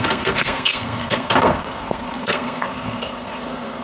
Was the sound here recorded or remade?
remade